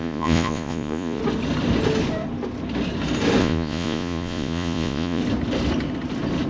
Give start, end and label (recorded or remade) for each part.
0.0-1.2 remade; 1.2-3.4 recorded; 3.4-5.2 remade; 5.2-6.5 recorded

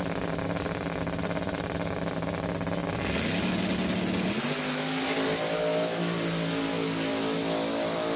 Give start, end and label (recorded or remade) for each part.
0.0-8.2 recorded

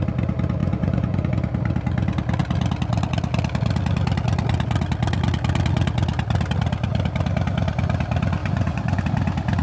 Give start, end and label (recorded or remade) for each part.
0.0-0.6 recorded; 0.6-1.3 remade; 1.3-8.4 recorded; 8.4-9.0 remade; 9.0-9.6 recorded